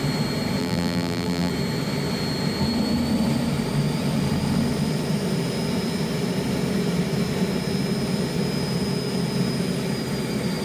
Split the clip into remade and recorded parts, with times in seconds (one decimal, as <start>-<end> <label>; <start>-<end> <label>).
0.0-0.6 recorded; 0.6-1.5 remade; 1.5-10.6 recorded